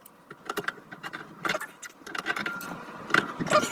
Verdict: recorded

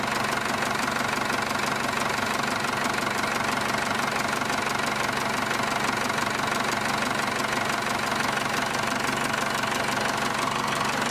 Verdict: recorded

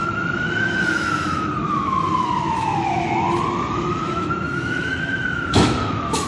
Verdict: remade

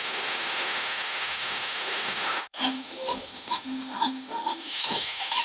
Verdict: remade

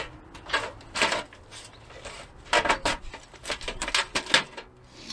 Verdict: recorded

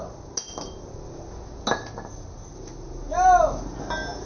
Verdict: recorded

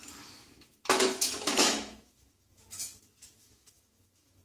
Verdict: remade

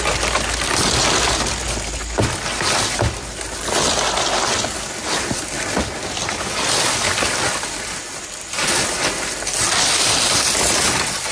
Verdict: recorded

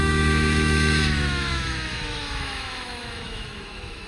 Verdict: remade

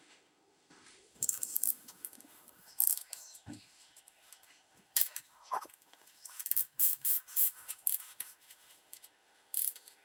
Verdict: remade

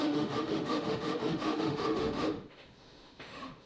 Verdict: remade